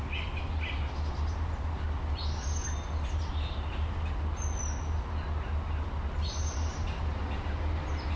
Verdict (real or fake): real